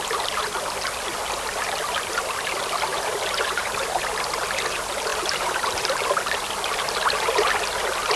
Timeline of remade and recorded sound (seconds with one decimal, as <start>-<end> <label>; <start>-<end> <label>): 0.0-2.9 recorded; 2.9-3.7 remade; 3.7-5.1 recorded; 5.1-5.9 remade; 5.9-8.2 recorded